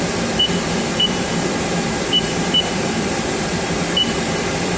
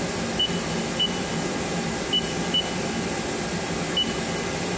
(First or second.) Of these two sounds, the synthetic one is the first